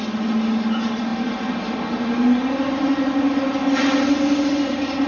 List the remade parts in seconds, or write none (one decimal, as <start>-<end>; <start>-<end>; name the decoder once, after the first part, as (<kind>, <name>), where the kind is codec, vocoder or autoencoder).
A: none